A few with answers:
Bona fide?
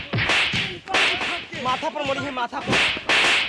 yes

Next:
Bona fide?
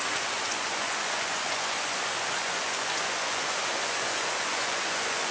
no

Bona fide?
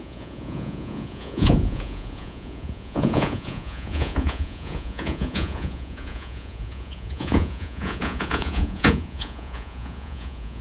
no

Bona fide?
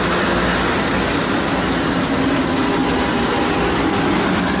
yes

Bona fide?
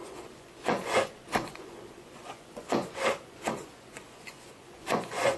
no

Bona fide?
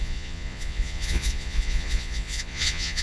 no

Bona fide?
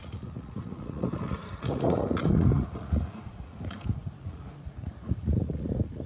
no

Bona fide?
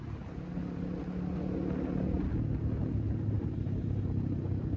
yes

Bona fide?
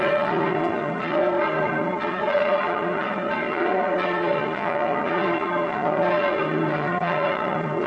no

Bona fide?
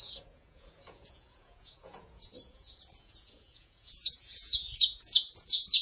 no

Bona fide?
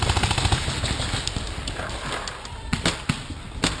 yes